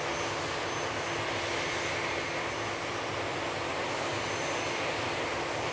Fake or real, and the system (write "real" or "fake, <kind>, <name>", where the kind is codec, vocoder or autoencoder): real